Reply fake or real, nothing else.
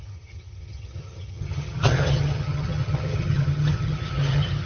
fake